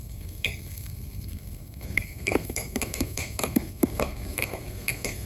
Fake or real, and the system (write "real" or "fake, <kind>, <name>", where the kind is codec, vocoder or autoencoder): fake, codec, SNAC